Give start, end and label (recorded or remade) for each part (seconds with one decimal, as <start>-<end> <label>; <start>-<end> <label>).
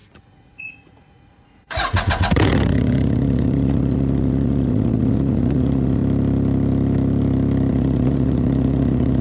0.0-6.0 remade; 6.0-7.7 recorded; 7.7-9.2 remade